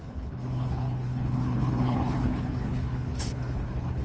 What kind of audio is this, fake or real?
fake